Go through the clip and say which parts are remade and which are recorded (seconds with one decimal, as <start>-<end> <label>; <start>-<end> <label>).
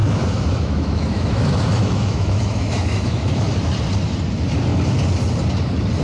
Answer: 0.0-3.5 remade; 3.5-6.0 recorded